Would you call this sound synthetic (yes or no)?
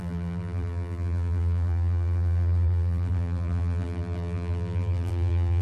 yes